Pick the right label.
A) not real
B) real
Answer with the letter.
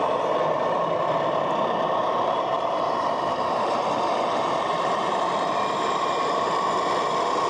A